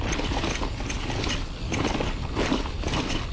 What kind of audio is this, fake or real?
real